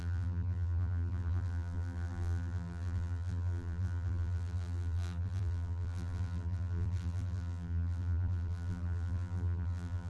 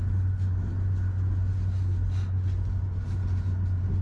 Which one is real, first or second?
second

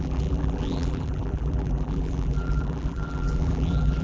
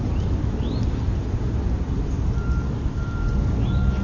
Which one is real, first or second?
second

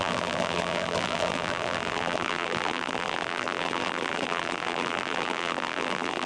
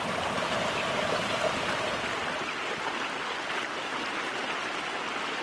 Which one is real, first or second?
second